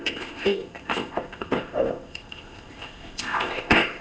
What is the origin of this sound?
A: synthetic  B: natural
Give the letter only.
A